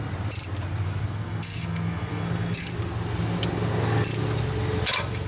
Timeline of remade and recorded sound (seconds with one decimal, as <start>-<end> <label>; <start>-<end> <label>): 0.0-1.0 recorded; 1.0-2.7 remade; 2.7-5.3 recorded